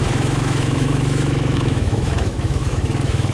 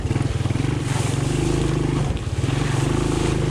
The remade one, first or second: first